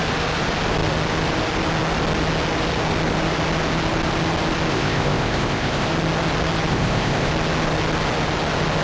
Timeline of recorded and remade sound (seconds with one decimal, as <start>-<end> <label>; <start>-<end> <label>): 0.0-4.7 recorded; 4.7-5.9 remade; 5.9-6.7 recorded; 6.7-7.3 remade; 7.3-8.8 recorded

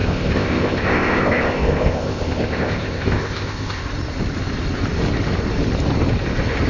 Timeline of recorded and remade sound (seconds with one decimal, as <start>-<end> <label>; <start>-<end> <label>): 0.0-3.8 remade; 3.8-6.7 recorded

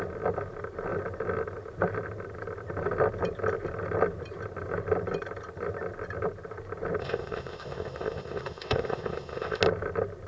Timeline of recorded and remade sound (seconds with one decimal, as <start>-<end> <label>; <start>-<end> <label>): 0.0-7.0 recorded; 7.0-9.6 remade; 9.6-10.3 recorded

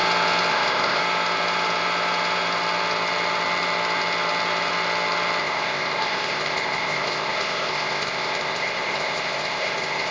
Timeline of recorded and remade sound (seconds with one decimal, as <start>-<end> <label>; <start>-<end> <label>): 0.0-0.5 recorded; 0.5-1.0 remade; 1.0-5.4 recorded; 5.4-10.1 remade

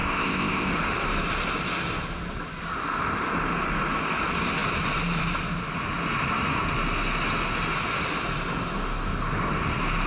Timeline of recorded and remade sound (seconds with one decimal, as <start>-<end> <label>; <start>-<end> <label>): 0.0-0.7 remade; 0.7-10.1 recorded